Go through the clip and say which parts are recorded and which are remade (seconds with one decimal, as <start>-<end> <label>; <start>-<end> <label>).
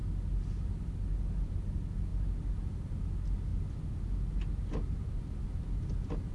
0.0-6.3 recorded